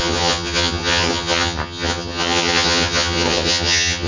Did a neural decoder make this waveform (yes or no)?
yes